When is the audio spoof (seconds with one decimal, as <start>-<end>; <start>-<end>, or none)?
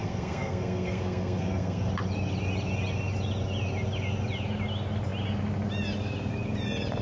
0.0-1.9